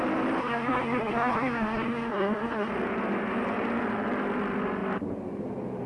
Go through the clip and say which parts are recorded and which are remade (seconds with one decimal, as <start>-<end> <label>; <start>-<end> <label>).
0.0-0.4 recorded; 0.4-2.7 remade; 2.7-5.9 recorded